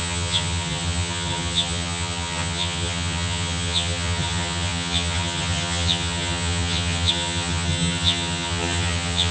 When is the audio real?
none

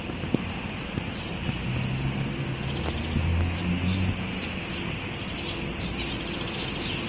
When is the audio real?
0.0-7.1

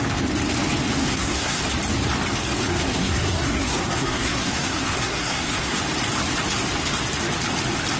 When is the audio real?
0.0-1.0; 1.6-2.7; 5.8-8.0

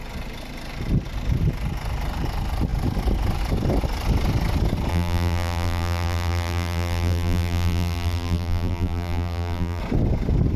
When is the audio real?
0.0-4.9; 9.8-10.6

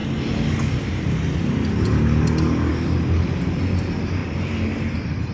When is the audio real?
0.0-4.2; 4.8-5.3

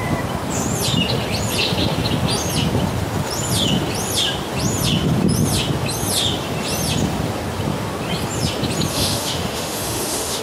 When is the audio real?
0.0-8.9

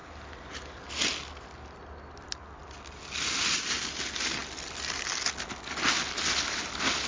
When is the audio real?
0.0-7.1